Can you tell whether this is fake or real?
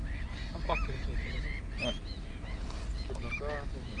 real